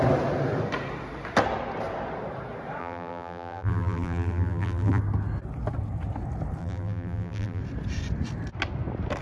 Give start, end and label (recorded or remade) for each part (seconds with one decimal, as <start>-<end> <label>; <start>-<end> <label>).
0.0-2.8 recorded; 2.8-5.0 remade; 5.0-6.6 recorded; 6.6-7.6 remade; 7.6-9.2 recorded